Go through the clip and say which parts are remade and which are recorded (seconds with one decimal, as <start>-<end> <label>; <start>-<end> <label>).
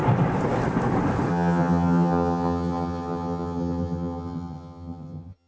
0.0-1.3 recorded; 1.3-5.5 remade